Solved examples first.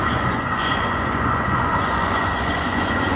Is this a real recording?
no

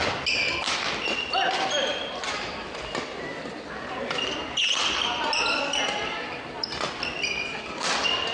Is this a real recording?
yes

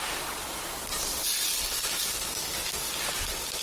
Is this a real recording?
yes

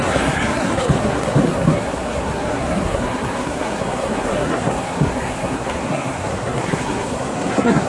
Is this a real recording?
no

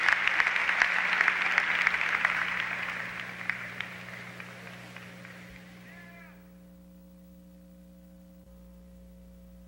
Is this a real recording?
yes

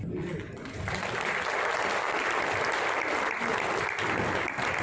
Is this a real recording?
yes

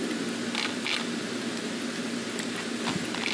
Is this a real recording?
yes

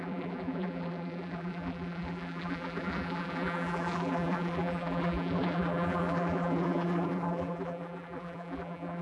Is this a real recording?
no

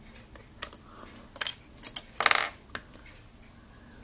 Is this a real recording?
yes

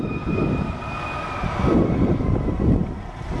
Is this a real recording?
yes